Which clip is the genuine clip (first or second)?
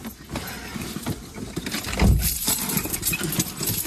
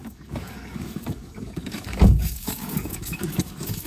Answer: first